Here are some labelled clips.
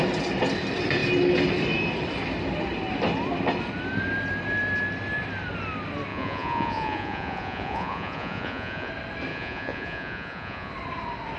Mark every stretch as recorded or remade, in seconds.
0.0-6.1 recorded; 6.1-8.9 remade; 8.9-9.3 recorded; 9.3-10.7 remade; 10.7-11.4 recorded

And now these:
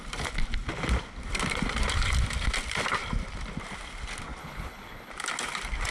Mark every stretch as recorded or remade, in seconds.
0.0-4.4 recorded; 4.4-5.1 remade; 5.1-5.9 recorded

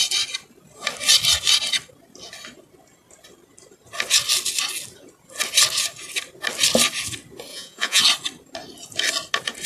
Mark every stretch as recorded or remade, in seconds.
0.0-7.5 recorded; 7.5-8.0 remade; 8.0-9.7 recorded

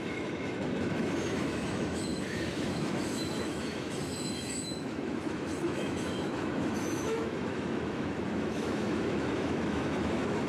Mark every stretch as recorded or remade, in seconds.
0.0-10.5 remade